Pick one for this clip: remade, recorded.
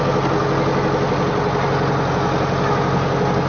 recorded